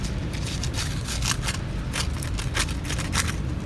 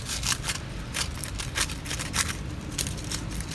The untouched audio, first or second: first